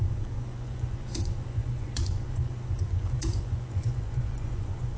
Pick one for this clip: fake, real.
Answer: fake